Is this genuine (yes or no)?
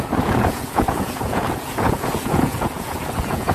no